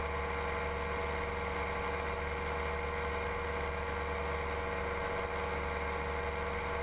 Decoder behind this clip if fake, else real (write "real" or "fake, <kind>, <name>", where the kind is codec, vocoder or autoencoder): real